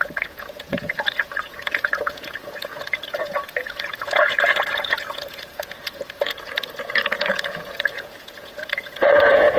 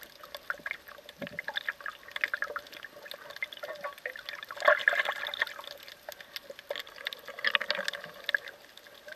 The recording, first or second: second